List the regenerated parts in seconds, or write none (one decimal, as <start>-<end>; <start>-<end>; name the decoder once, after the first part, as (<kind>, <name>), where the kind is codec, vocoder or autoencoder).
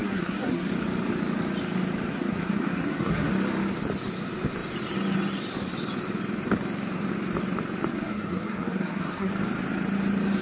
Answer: 0.0-0.7 (codec, SNAC); 2.1-3.3; 7.9-9.3